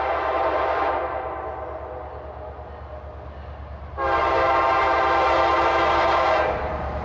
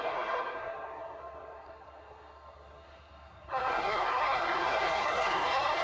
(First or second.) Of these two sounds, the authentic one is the first